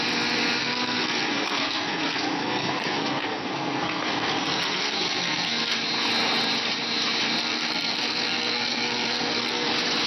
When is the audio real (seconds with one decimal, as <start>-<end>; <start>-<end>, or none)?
0.0-0.6; 5.7-7.4; 9.7-10.1